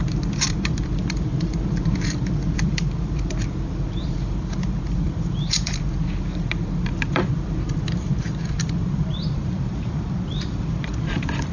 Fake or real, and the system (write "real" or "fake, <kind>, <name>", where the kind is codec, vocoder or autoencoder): fake, vocoder, BigVGAN v2